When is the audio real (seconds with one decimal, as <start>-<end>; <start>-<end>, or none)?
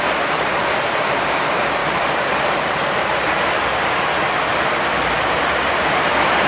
0.0-1.8; 3.5-4.5